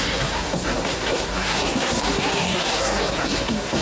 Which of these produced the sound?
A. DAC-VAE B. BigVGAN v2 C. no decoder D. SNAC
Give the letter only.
D